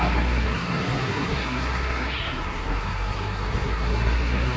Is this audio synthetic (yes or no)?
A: yes